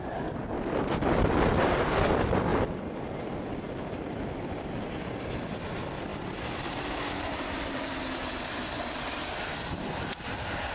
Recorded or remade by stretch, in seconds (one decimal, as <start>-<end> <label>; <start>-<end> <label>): 0.0-6.1 recorded; 6.1-7.9 remade; 7.9-10.7 recorded